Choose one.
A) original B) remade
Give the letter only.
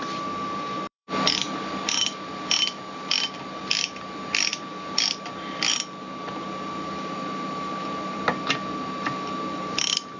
B